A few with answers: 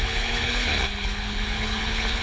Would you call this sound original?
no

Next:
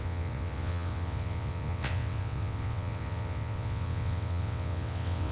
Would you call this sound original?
no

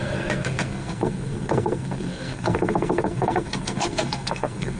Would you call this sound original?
no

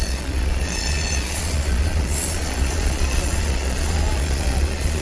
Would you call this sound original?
no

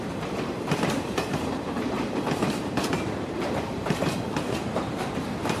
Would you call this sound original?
no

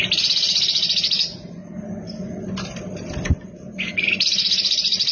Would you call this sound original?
yes